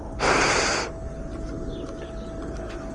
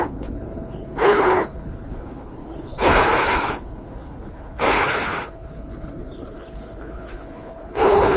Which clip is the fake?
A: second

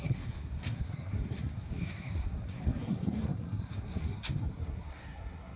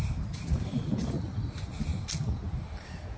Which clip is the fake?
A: first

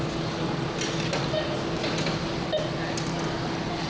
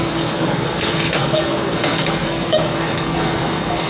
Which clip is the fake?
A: second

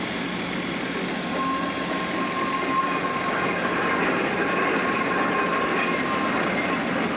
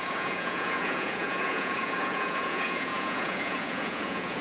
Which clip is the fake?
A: second